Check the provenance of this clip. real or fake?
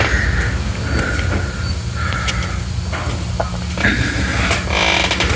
real